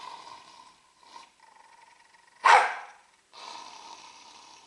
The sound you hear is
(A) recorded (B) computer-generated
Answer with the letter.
B